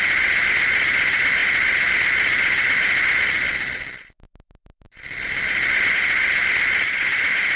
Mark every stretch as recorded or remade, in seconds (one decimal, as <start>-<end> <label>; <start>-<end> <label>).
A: 0.0-7.6 recorded